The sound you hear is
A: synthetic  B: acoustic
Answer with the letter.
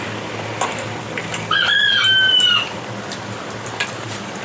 B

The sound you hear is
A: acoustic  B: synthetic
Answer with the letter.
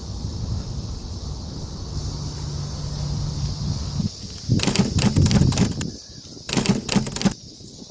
A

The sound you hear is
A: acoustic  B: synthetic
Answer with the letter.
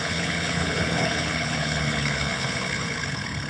B